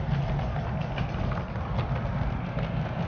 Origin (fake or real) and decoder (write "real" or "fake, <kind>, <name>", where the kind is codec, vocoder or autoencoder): real